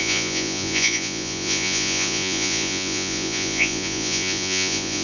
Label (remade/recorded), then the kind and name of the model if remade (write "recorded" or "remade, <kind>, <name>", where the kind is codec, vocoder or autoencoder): remade, vocoder, Vocos